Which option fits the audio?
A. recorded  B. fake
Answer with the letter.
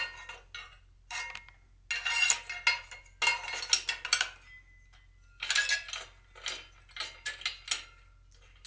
A